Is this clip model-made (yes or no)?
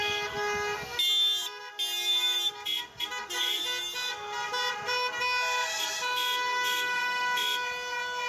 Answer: no